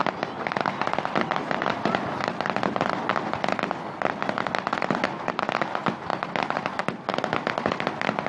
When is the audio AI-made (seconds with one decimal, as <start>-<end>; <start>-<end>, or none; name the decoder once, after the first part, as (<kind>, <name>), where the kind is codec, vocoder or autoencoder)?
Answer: none